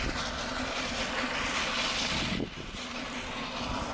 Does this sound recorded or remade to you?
recorded